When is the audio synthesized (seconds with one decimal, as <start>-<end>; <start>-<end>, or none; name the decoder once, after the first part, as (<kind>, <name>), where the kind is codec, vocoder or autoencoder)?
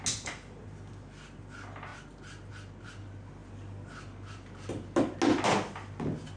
none